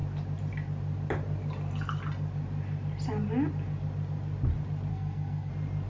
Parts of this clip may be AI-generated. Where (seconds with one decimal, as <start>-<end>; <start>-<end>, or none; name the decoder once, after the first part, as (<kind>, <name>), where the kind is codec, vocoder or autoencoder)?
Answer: 4.9-5.5 (codec, SNAC)